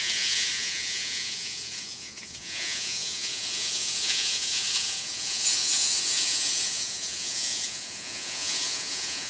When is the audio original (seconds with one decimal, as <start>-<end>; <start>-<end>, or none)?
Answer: none

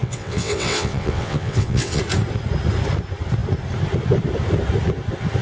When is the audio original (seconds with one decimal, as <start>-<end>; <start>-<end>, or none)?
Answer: 2.0-5.4

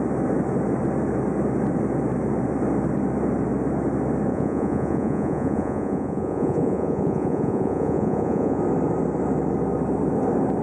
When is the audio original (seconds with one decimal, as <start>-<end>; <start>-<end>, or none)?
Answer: 0.0-4.3; 8.6-10.6

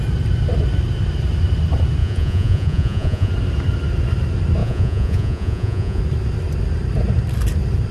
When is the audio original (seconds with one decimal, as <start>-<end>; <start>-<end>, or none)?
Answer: 0.0-2.0; 3.3-4.6; 6.0-7.9

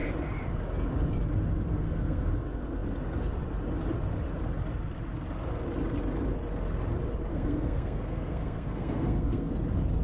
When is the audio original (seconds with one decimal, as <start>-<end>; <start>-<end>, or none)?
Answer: 0.0-1.7; 2.3-7.3; 9.5-10.0

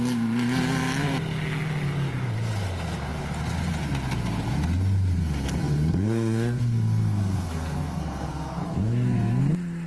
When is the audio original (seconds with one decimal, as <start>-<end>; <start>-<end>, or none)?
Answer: 0.0-5.2; 9.5-9.9

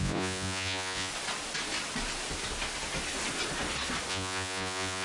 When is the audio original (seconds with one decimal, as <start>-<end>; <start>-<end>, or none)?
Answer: 1.1-4.1

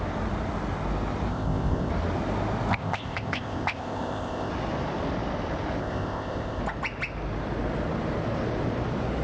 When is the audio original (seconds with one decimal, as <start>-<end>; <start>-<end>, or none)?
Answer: 0.0-1.3; 1.9-2.7; 4.5-5.8; 6.6-9.2